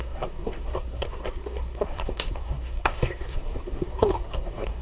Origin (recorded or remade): remade